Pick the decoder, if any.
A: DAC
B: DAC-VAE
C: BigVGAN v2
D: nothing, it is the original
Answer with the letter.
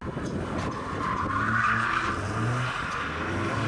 D